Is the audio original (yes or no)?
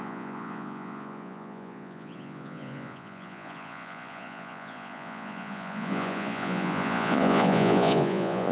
no